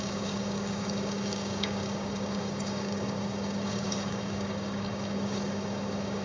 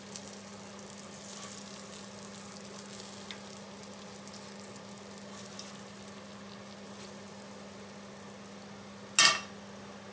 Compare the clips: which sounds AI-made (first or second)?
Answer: first